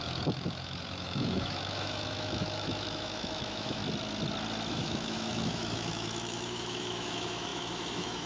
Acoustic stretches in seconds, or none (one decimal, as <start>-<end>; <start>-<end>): 3.8-4.7